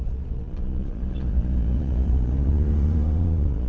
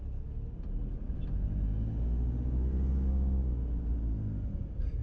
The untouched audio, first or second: second